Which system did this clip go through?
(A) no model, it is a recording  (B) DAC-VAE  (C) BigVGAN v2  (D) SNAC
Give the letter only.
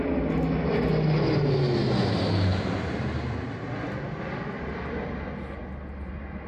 A